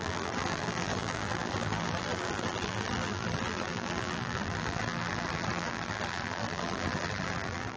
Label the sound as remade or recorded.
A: remade